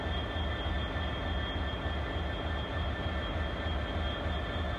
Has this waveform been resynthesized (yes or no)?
no